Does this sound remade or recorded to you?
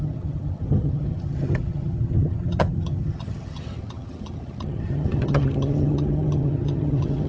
remade